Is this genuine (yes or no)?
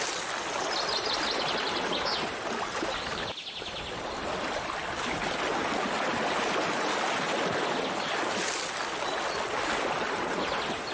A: yes